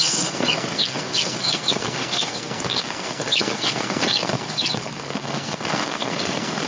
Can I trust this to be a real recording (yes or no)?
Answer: no